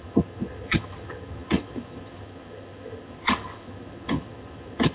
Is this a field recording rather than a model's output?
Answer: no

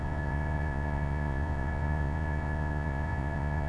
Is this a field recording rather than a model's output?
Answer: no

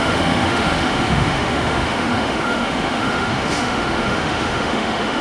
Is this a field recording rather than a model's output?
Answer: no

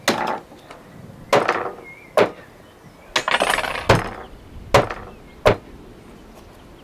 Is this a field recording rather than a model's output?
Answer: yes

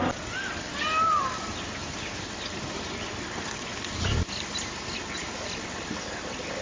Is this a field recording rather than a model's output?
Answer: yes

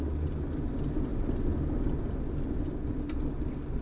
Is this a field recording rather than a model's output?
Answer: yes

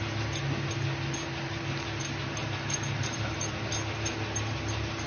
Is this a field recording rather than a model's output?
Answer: yes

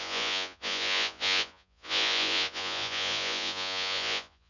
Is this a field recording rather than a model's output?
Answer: no